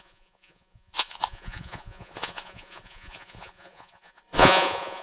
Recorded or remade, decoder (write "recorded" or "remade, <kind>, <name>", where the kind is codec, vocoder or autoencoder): remade, vocoder, Vocos